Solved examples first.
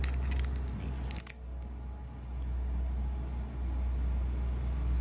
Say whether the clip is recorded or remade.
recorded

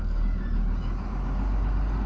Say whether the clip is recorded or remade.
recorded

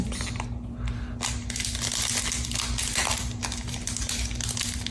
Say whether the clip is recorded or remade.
recorded